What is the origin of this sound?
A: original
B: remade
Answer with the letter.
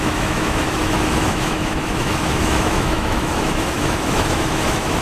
B